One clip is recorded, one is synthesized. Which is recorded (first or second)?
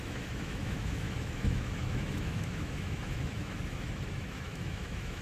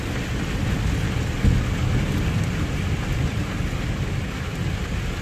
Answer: second